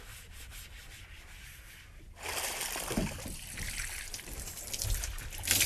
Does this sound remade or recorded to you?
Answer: recorded